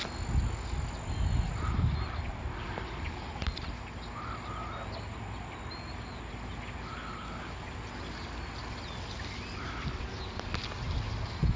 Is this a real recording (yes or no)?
yes